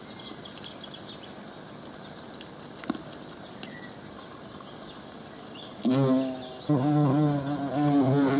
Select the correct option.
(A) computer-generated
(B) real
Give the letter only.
B